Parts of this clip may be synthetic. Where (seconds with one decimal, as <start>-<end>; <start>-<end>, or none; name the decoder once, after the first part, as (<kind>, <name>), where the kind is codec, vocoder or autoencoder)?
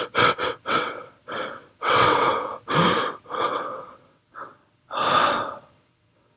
0.0-1.2 (vocoder, WaveNeXt); 1.7-2.5; 3.4-4.5; 5.6-6.4